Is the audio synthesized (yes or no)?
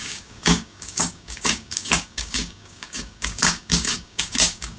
yes